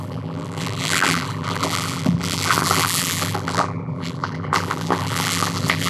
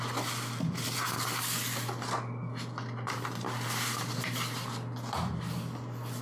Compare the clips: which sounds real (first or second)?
second